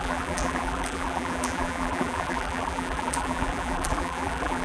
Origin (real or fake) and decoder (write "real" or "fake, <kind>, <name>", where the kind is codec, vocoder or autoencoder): fake, vocoder, BigVGAN v2